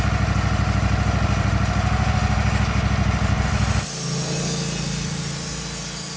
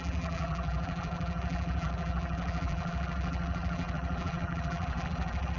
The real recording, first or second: first